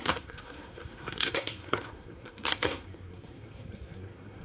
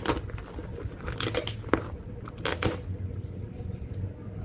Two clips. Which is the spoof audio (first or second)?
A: first